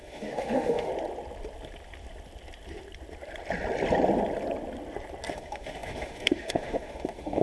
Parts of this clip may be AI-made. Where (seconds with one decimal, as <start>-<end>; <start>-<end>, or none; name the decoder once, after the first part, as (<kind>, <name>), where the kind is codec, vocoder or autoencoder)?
0.0-0.9 (autoencoder, DAC-VAE); 5.3-7.4